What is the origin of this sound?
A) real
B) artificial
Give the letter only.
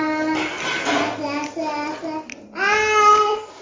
A